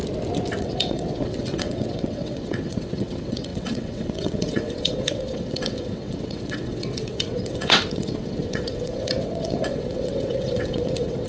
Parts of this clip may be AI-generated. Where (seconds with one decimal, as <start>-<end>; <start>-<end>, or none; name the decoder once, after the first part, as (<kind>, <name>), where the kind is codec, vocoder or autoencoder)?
0.6-11.3 (vocoder, WaveNeXt)